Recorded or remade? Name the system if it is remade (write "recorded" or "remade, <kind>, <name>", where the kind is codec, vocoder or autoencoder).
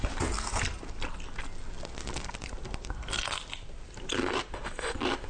recorded